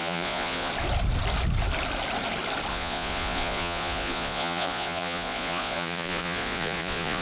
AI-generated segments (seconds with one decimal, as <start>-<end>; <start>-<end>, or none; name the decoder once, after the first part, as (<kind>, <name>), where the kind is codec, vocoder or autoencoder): 0.0-0.7 (vocoder, Vocos); 2.7-7.2